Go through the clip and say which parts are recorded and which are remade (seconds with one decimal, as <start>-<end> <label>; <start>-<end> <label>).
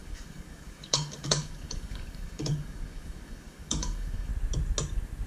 0.0-4.3 remade; 4.3-5.3 recorded